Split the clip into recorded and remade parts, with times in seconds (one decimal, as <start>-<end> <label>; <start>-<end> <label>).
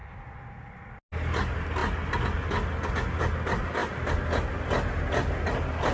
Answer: 0.0-5.9 recorded